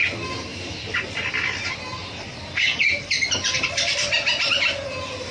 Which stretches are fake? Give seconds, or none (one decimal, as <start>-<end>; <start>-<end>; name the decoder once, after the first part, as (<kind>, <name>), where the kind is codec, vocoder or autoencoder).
0.5-1.2 (vocoder, BigVGAN v2); 2.0-4.5